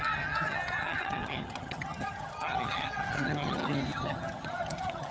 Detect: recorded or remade remade